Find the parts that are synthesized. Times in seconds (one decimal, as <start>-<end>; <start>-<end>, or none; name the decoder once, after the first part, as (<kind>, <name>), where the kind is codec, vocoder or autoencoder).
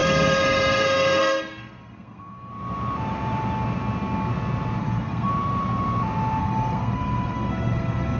0.0-2.5 (codec, SNAC); 4.8-5.3; 6.4-8.2